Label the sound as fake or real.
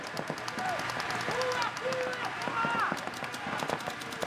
real